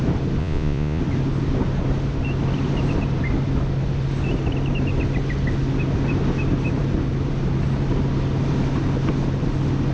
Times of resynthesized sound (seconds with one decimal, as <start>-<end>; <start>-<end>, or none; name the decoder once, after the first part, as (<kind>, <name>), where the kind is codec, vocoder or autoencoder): 0.4-1.0 (vocoder, Vocos)